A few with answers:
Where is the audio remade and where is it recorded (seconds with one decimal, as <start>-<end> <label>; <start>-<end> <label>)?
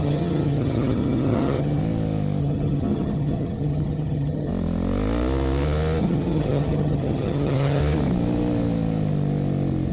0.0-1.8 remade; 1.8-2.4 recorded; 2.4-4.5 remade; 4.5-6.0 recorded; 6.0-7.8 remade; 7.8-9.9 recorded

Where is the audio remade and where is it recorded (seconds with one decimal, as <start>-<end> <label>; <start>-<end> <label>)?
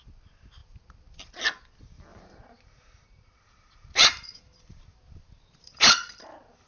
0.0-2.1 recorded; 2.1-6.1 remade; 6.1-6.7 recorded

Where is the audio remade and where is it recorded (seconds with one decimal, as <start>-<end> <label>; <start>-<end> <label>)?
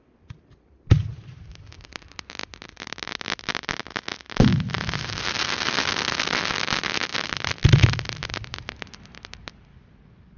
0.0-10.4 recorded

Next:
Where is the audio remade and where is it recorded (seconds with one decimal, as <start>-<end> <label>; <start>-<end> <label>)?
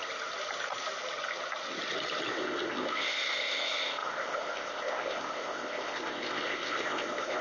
0.0-2.3 recorded; 2.3-7.4 remade